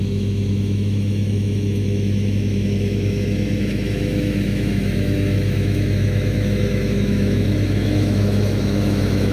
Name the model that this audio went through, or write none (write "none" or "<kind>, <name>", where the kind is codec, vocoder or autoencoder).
autoencoder, DAC-VAE